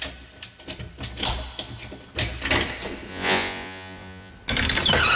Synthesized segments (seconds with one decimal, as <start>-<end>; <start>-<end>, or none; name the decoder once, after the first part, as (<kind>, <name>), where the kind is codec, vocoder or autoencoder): 3.1-4.3 (vocoder, Vocos)